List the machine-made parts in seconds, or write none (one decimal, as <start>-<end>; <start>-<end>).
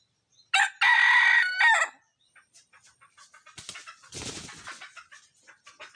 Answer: none